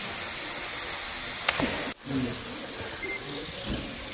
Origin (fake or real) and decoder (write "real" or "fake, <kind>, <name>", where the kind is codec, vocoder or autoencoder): real